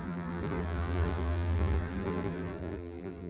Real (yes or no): no